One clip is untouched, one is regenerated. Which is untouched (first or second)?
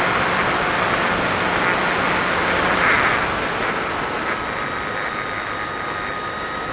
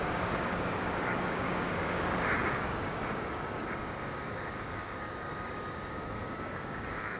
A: first